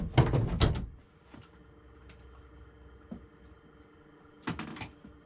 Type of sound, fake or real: real